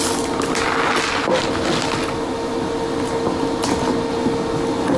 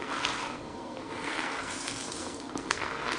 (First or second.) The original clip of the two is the first